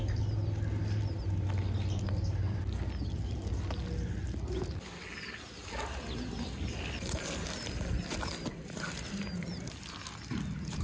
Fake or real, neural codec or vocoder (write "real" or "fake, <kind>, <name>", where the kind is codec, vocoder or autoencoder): real